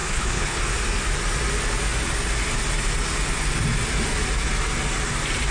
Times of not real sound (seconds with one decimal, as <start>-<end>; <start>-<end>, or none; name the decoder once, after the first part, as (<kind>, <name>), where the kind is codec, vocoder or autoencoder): 0.0-0.6 (codec, HILCodec)